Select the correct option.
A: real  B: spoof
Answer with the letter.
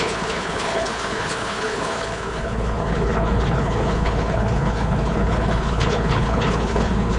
B